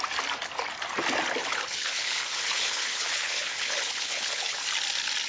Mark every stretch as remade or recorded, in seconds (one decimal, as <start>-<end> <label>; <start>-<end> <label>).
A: 0.0-1.4 recorded; 1.4-4.6 remade; 4.6-5.3 recorded